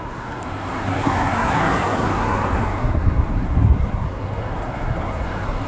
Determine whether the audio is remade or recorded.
remade